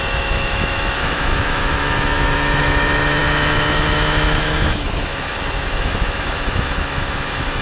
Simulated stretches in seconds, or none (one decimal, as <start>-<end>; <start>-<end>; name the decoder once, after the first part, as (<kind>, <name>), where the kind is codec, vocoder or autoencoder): 0.0-7.6 (autoencoder, DAC-VAE)